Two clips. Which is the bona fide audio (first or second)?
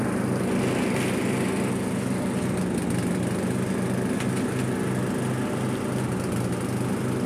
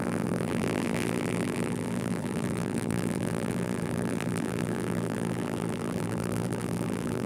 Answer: first